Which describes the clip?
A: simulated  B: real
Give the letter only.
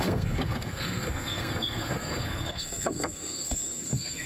A